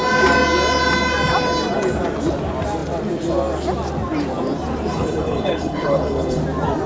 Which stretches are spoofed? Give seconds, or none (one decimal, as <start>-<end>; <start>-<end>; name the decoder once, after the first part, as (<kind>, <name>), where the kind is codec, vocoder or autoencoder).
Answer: 4.9-6.4 (codec, HILCodec)